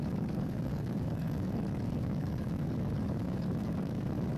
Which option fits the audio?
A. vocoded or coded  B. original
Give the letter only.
A